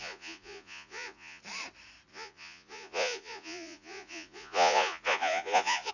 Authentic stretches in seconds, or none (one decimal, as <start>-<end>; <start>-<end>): 1.4-2.1